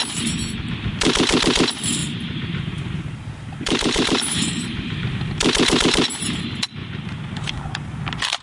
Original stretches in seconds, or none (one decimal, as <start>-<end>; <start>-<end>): 0.0-2.0; 5.3-6.8; 8.0-8.4